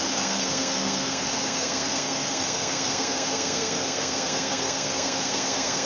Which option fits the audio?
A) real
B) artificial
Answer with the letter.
B